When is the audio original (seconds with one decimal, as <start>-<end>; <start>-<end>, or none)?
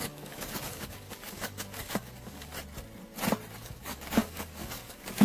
2.5-3.6